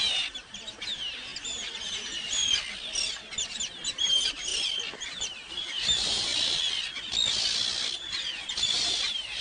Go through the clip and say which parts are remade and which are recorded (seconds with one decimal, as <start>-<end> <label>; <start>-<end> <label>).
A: 0.0-2.4 remade; 2.4-3.4 recorded; 3.4-4.5 remade; 4.5-5.5 recorded; 5.5-6.3 remade; 6.3-8.5 recorded; 8.5-9.4 remade